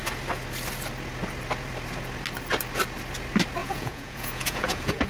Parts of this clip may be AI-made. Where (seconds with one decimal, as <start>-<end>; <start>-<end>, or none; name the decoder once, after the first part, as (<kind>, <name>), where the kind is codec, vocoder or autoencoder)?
3.6-5.1 (vocoder, Vocos)